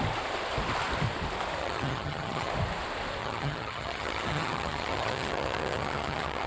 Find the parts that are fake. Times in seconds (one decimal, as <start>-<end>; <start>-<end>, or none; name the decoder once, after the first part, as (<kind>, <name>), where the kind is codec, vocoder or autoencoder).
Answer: 1.6-2.5 (vocoder, HiFi-GAN); 3.2-6.5